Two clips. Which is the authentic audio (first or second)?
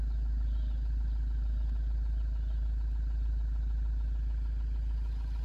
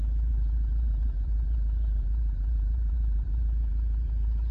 first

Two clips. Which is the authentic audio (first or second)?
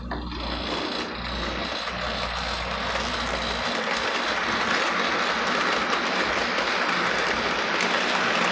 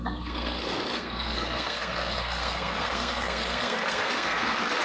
first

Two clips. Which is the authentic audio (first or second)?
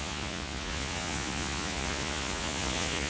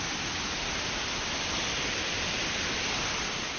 second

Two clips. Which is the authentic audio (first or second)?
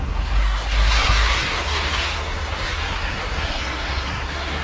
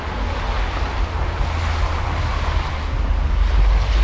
second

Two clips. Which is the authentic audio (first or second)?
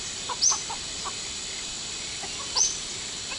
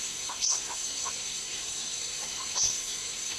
first